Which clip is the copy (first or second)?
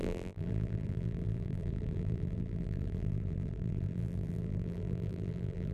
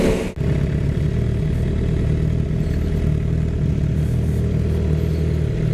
first